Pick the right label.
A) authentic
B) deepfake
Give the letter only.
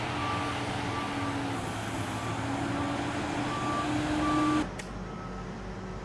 A